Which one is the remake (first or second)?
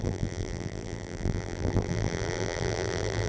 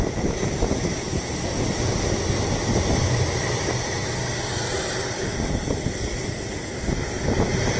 first